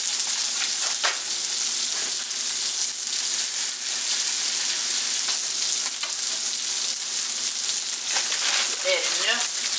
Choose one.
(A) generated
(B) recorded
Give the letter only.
B